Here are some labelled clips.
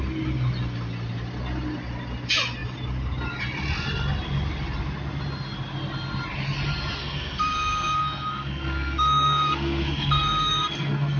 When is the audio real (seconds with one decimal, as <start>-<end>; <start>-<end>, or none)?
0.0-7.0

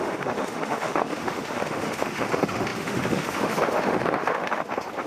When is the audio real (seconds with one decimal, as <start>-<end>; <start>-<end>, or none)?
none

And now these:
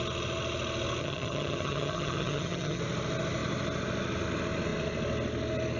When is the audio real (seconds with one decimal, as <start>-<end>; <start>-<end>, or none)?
0.0-1.0; 2.8-5.8